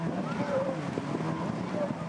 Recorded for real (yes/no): yes